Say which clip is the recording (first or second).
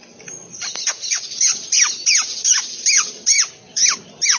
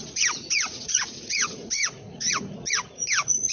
first